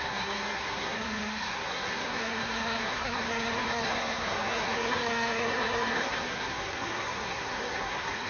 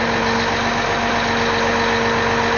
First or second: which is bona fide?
second